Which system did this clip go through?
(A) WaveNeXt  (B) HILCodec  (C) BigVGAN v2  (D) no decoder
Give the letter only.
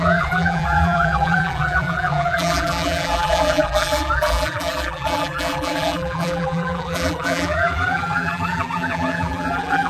C